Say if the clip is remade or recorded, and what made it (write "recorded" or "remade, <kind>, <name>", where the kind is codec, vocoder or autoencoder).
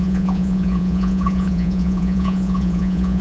remade, vocoder, Vocos